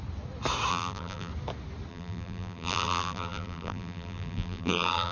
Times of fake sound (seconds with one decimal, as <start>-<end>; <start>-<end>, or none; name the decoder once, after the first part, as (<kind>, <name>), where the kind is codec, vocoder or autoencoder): 0.7-1.3 (vocoder, BigVGAN v2); 1.9-5.1